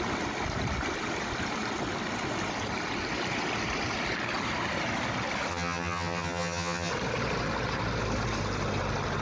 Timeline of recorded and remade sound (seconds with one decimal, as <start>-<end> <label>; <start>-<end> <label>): 0.0-5.5 recorded; 5.5-6.9 remade; 6.9-9.2 recorded